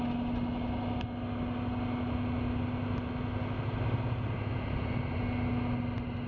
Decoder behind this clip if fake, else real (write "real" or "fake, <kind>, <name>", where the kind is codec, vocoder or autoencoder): real